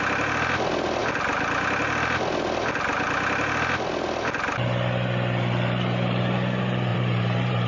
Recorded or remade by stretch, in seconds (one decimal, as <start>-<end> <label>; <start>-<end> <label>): 0.0-6.9 recorded; 6.9-7.7 remade